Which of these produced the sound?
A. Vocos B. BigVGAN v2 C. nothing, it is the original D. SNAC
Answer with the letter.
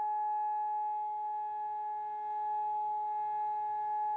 C